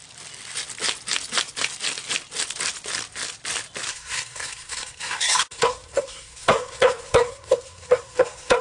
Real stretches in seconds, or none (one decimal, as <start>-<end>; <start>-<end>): 0.0-3.9